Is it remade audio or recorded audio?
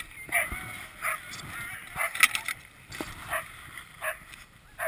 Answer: recorded